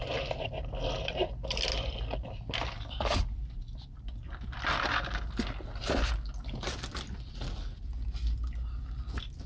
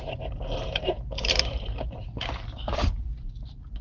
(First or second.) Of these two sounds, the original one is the first